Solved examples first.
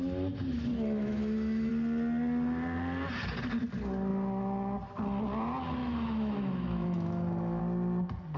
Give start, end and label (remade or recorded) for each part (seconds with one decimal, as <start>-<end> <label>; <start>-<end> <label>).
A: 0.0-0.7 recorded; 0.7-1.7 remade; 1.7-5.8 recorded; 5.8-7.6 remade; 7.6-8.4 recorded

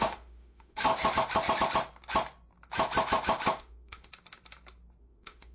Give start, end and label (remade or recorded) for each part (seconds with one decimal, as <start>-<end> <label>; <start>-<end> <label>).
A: 0.0-0.9 remade; 0.9-3.6 recorded; 3.6-4.1 remade; 4.1-5.0 recorded; 5.0-5.5 remade

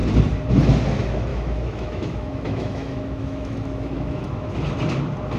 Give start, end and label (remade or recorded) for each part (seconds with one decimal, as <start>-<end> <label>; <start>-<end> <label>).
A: 0.0-1.3 recorded; 1.3-4.5 remade; 4.5-5.4 recorded